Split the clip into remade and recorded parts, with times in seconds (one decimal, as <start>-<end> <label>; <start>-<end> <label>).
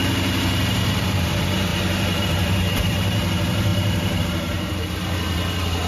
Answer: 0.0-0.7 recorded; 0.7-5.9 remade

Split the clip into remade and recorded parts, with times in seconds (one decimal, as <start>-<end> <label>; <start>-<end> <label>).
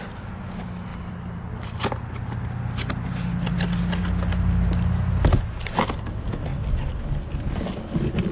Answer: 0.0-0.9 recorded; 0.9-2.0 remade; 2.0-8.3 recorded